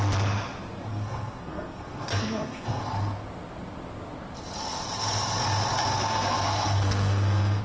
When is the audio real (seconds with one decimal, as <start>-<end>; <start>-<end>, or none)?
0.0-0.9; 2.8-5.9